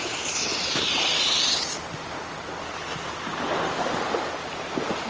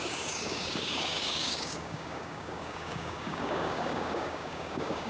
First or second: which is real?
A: first